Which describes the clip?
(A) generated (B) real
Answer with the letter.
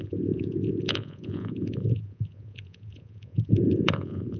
A